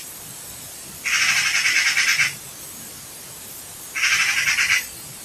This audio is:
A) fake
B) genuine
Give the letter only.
B